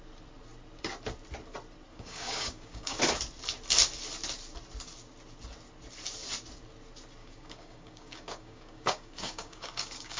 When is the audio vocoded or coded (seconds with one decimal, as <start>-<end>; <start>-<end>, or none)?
1.9-3.0; 7.2-10.2